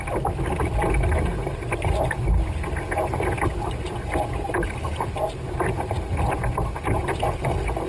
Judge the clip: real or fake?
real